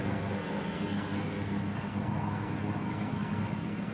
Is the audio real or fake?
fake